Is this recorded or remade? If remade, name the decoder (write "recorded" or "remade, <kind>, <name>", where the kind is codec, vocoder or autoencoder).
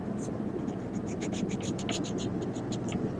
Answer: recorded